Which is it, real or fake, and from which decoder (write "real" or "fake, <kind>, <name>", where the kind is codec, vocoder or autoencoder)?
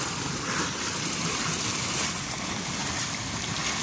real